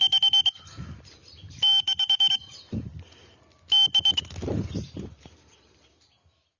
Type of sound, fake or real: real